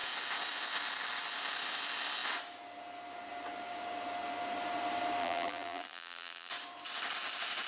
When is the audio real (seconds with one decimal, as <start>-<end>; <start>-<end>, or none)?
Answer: 0.0-5.2; 6.5-7.7